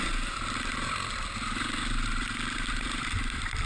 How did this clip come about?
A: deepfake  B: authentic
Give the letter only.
A